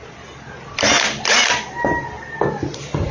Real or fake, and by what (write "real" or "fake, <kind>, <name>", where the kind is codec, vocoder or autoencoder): real